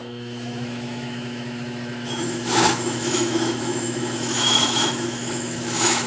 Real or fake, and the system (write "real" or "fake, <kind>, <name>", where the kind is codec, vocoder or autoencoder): fake, autoencoder, DAC-VAE